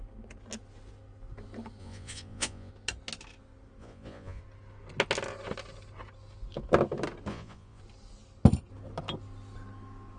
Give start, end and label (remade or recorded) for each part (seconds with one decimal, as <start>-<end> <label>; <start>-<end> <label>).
0.0-1.8 recorded; 1.8-2.7 remade; 2.7-3.8 recorded; 3.8-4.4 remade; 4.4-7.3 recorded; 7.3-7.8 remade; 7.8-10.2 recorded